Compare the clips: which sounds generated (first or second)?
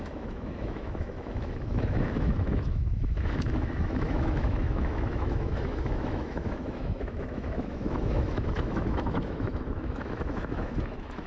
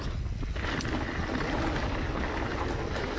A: first